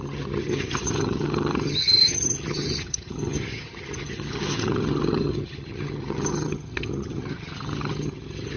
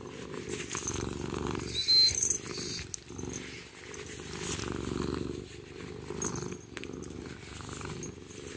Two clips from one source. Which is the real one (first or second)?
second